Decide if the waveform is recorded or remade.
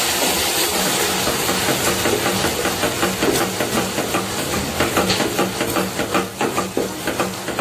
recorded